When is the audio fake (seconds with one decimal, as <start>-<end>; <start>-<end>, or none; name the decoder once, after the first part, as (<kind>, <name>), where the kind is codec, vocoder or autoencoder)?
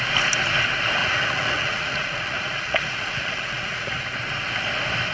1.0-4.1 (vocoder, Vocos)